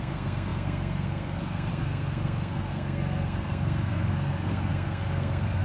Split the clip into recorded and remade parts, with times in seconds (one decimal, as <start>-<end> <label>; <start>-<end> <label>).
0.0-5.6 remade